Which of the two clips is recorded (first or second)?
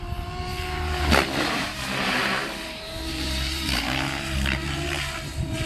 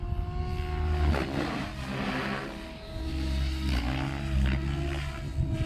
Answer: second